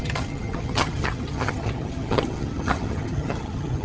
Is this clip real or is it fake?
fake